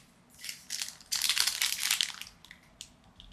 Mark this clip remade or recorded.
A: recorded